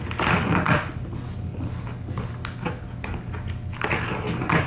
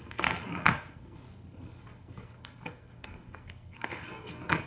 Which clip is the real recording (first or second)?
first